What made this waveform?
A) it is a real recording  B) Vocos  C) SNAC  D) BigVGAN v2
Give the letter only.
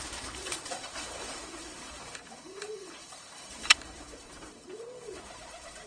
D